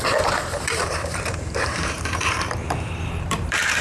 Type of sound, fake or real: fake